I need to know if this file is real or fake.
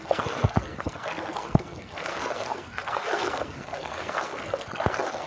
fake